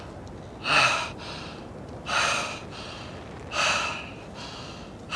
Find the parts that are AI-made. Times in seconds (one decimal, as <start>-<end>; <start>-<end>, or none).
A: none